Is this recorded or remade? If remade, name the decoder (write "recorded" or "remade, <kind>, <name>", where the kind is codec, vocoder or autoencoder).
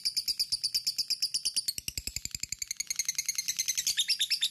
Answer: recorded